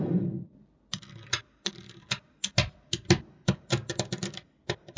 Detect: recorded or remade recorded